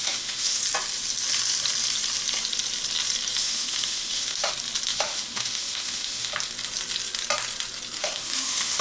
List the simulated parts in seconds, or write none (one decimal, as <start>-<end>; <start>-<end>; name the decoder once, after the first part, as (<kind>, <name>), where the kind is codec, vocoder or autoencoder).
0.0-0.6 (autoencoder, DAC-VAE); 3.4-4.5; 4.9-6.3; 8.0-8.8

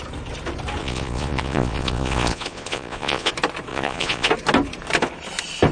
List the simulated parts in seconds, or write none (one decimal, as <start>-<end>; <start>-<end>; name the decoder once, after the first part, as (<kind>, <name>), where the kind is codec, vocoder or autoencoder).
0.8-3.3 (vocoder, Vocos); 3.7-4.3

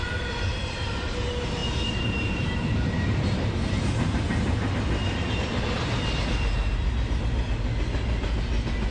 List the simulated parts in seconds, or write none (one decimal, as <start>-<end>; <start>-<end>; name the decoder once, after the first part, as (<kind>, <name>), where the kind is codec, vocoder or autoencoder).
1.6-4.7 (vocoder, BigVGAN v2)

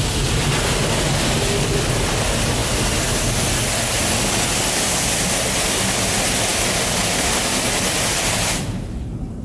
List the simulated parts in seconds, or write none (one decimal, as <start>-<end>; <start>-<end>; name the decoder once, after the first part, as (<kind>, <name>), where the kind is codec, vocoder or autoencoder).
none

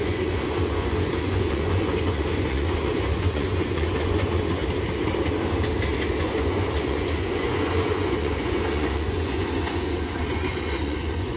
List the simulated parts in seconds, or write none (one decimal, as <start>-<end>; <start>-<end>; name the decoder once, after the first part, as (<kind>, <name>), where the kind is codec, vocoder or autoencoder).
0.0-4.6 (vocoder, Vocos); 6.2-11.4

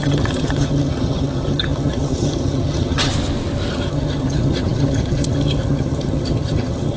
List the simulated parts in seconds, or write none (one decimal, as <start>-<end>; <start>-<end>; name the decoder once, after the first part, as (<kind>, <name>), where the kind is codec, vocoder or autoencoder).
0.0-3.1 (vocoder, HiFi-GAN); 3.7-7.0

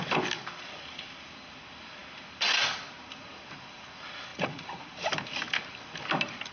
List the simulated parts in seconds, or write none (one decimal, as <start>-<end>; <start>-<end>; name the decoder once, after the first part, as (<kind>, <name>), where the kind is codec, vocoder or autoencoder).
4.3-4.8 (vocoder, BigVGAN v2)